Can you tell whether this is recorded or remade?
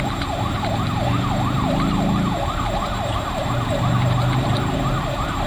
remade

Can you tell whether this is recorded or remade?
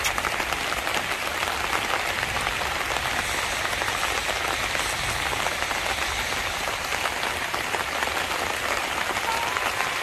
recorded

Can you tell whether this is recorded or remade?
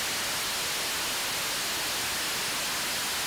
recorded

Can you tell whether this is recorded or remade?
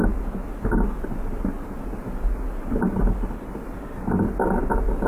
recorded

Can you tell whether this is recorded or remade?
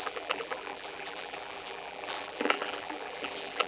remade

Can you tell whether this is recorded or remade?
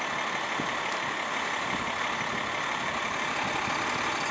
remade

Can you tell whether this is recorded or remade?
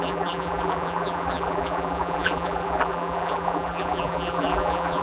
remade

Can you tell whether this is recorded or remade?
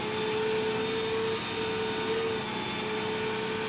recorded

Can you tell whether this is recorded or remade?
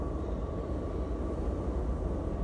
recorded